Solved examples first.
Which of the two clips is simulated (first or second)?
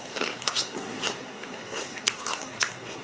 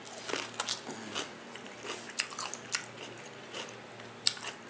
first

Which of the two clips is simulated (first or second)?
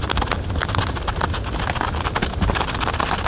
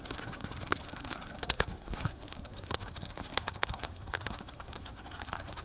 second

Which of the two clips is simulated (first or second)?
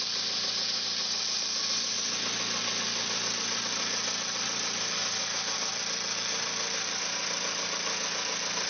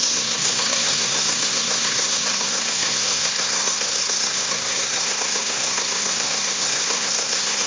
second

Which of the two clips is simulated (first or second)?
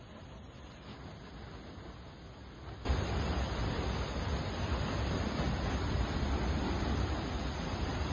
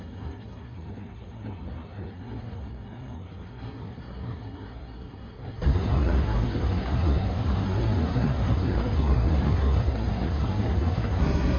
second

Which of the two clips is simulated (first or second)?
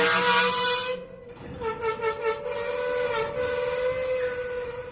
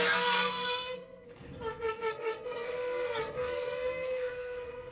second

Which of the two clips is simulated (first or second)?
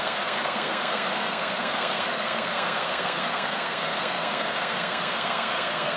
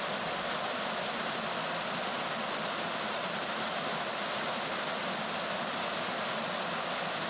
first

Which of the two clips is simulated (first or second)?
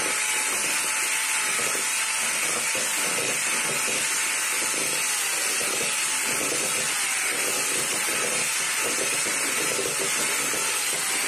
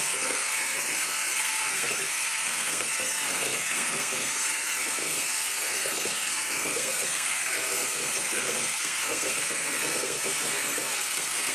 second